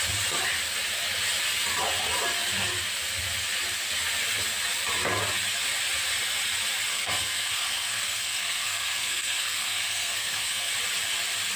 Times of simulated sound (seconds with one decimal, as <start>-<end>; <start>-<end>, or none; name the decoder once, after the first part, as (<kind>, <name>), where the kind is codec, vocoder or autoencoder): 6.9-10.7 (codec, SNAC)